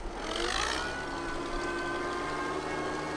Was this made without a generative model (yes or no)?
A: yes